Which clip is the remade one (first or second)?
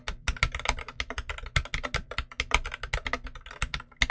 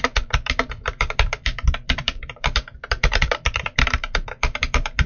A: second